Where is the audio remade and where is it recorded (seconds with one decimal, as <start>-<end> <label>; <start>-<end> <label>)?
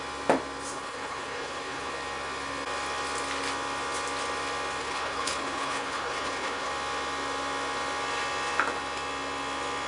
0.0-0.7 recorded; 0.7-1.9 remade; 1.9-4.8 recorded; 4.8-6.7 remade; 6.7-9.9 recorded